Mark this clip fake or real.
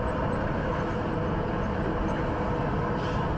real